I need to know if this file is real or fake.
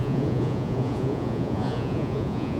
fake